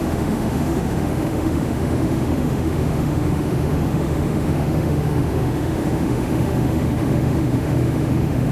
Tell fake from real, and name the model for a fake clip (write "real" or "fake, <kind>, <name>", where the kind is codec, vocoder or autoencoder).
fake, autoencoder, DAC-VAE